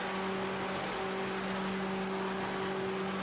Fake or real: real